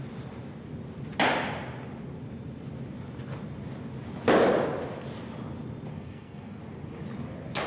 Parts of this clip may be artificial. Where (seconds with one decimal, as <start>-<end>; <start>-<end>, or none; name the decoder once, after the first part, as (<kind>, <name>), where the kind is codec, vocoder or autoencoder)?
5.9-6.6 (codec, SNAC)